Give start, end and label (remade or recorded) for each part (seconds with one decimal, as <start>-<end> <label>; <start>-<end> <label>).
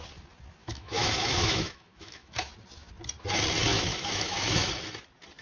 0.0-0.6 recorded; 0.6-2.5 remade; 2.5-3.7 recorded; 3.7-4.7 remade; 4.7-5.4 recorded